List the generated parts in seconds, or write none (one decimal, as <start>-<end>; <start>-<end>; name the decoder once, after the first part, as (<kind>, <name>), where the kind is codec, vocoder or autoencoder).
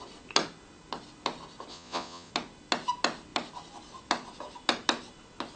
1.7-2.3 (vocoder, Vocos)